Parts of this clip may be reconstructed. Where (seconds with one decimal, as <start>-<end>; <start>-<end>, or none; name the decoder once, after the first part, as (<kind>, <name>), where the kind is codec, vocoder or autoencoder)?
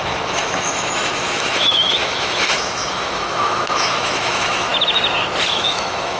0.0-4.7 (autoencoder, DAC-VAE); 5.5-6.2